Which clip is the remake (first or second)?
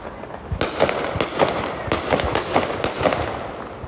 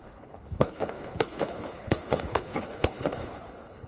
second